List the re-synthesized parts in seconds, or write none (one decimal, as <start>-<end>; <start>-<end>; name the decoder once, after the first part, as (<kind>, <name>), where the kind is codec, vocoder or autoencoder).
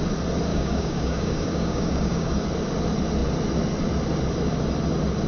0.5-2.3 (codec, DAC)